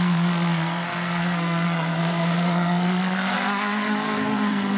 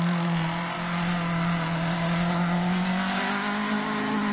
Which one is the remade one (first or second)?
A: first